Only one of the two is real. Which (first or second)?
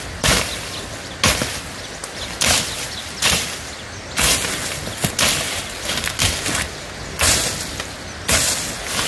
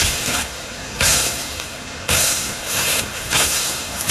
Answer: first